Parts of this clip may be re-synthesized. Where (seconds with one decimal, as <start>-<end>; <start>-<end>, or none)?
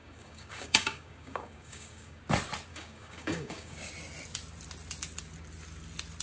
0.0-2.2; 2.7-3.9